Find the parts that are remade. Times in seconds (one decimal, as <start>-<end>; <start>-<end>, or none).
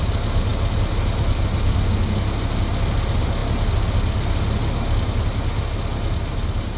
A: none